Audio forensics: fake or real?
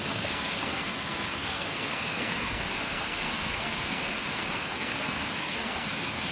fake